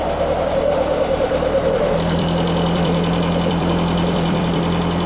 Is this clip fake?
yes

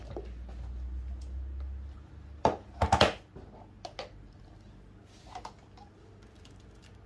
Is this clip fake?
no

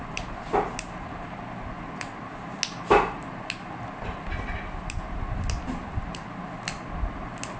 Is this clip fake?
no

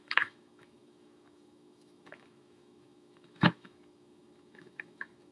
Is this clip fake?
yes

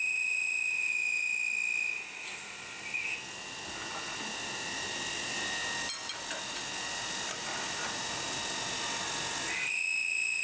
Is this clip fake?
no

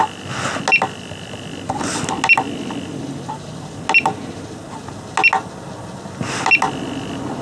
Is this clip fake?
no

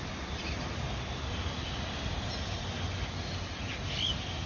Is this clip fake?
no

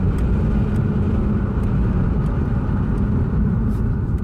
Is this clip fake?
no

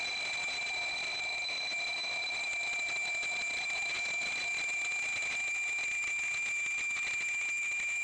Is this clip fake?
no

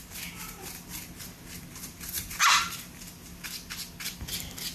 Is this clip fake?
no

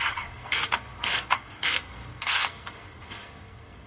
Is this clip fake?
yes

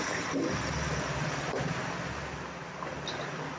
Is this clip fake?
no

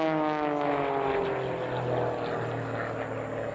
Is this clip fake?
no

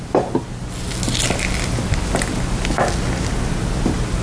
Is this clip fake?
no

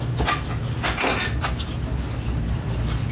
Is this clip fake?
no